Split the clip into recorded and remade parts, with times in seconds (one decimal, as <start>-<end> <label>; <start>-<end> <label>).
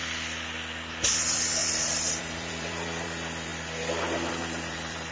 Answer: 0.0-0.9 recorded; 0.9-3.5 remade; 3.5-4.3 recorded; 4.3-5.1 remade